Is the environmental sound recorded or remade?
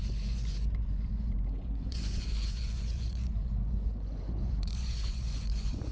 remade